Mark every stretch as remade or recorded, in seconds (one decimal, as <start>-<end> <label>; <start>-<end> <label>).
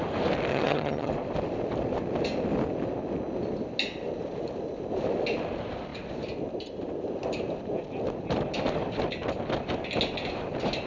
0.0-0.5 recorded; 0.5-1.1 remade; 1.1-10.9 recorded